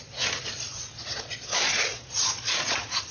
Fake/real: fake